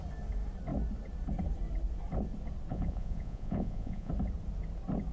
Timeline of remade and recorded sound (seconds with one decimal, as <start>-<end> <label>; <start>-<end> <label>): 0.0-2.7 recorded; 2.7-4.1 remade; 4.1-5.1 recorded